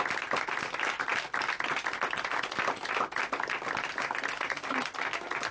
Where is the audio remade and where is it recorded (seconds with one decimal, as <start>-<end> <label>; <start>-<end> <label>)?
0.0-5.5 recorded